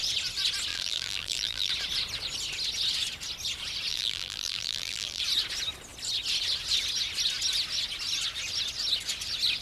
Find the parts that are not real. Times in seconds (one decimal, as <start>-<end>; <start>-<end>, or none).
0.7-1.7; 3.9-5.2